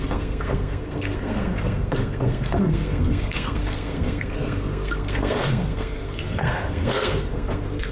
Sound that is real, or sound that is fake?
fake